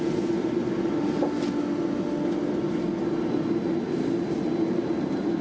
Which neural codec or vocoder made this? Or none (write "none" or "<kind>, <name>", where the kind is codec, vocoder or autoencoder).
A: none